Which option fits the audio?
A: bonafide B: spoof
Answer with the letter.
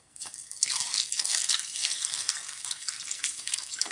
B